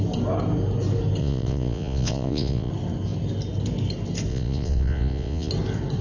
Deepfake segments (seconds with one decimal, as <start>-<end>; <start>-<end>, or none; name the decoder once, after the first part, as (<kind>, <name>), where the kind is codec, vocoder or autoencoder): 1.2-2.7 (vocoder, Vocos); 4.3-5.5